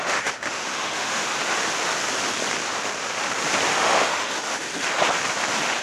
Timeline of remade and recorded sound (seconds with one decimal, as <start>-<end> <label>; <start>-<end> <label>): 0.0-1.3 remade; 1.3-3.7 recorded; 3.7-4.7 remade; 4.7-5.8 recorded